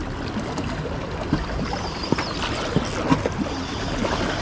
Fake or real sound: real